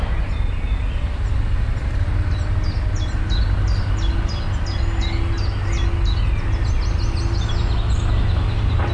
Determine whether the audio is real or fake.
real